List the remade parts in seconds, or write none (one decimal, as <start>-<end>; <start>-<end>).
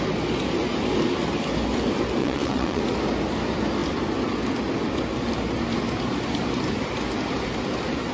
2.2-2.8